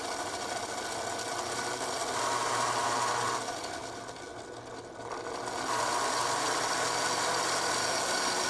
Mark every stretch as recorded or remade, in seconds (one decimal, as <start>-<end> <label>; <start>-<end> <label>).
0.0-8.5 recorded